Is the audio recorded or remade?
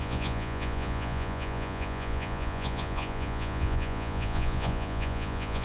remade